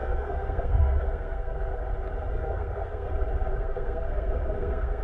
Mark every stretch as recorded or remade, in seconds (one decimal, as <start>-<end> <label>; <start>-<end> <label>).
0.0-1.7 remade; 1.7-2.3 recorded; 2.3-3.1 remade; 3.1-3.6 recorded; 3.6-5.0 remade